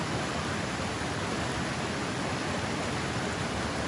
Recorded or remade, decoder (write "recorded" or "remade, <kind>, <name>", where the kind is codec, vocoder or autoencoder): recorded